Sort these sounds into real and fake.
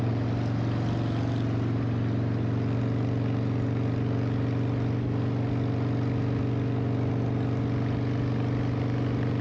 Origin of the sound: real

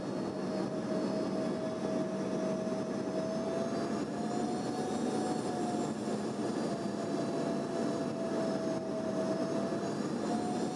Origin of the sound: real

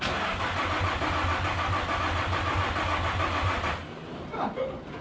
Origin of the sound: real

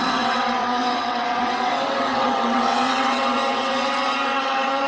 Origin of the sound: fake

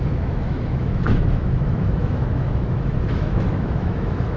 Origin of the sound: fake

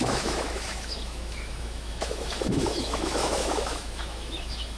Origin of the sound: fake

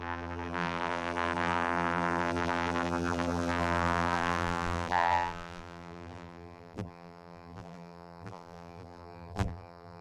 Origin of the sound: fake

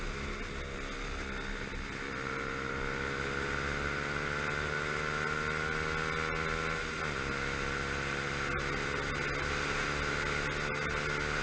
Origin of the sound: real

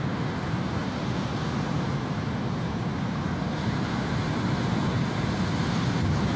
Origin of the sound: real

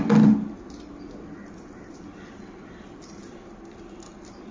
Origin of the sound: real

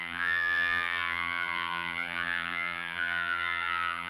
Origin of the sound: fake